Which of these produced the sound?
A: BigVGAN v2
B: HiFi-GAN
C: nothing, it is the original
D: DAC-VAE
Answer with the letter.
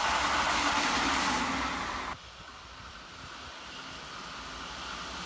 C